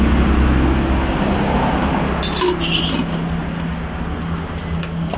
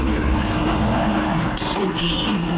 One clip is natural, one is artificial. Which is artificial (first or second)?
second